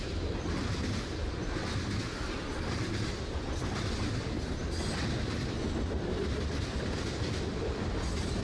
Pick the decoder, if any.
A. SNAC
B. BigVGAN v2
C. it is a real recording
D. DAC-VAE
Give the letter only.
C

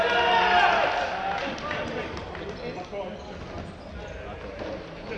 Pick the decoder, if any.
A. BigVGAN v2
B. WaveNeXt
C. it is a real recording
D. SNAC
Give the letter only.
C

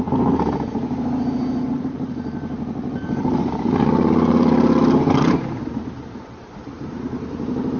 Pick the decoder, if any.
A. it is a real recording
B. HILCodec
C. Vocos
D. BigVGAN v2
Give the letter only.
D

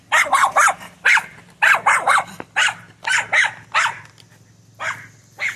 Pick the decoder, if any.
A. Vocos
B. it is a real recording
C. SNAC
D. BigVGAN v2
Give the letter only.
B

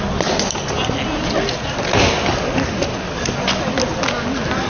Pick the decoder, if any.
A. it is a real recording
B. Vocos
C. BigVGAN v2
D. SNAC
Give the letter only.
A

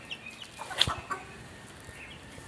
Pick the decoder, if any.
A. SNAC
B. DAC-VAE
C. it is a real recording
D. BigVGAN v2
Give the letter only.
C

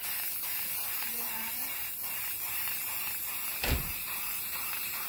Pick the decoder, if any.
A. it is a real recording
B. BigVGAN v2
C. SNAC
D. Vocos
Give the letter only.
B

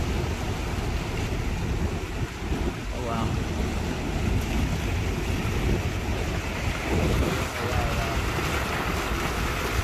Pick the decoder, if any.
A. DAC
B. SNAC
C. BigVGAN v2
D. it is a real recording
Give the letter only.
D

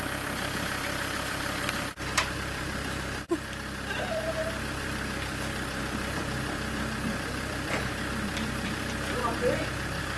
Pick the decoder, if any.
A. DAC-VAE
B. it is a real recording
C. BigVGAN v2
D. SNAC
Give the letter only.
C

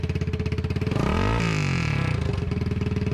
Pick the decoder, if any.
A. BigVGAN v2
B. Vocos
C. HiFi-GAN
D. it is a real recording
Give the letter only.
D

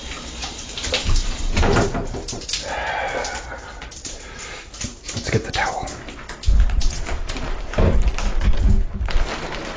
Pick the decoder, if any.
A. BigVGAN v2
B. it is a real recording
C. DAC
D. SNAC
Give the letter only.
A